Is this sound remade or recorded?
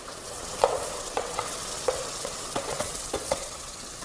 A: remade